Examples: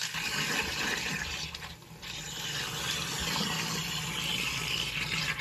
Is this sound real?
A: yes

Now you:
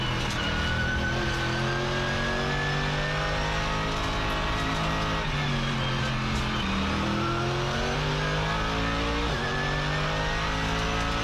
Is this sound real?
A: yes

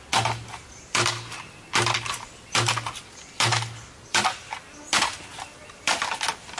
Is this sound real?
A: yes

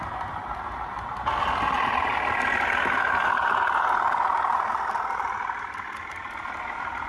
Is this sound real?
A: yes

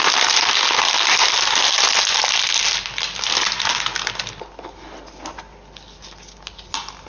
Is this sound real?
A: yes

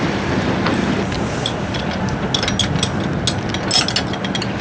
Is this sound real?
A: yes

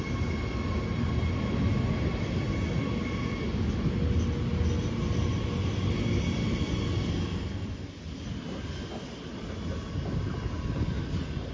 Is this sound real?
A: yes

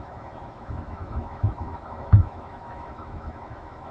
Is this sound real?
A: no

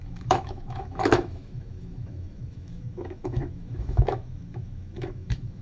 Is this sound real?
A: no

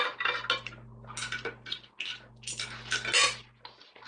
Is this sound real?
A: yes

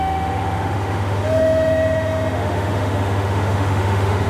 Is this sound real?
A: no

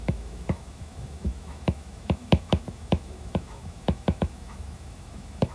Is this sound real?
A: no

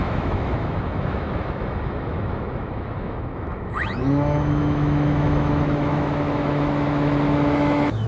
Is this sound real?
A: no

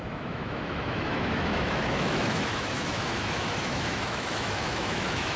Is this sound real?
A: no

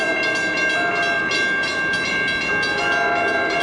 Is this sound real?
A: yes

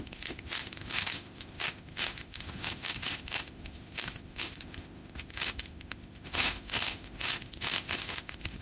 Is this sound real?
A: no